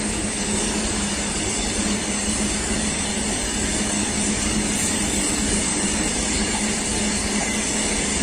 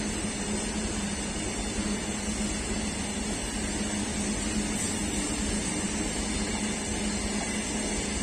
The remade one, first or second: first